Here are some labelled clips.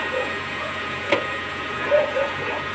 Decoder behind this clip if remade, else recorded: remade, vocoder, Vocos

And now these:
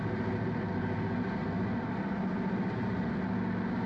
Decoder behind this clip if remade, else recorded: recorded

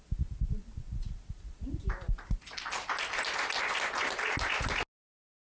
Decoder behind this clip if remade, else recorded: recorded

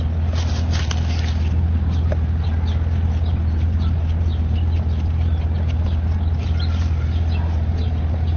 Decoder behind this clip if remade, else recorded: recorded